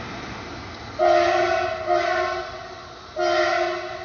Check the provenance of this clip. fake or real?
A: real